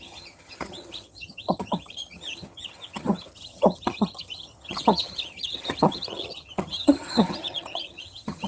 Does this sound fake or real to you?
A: fake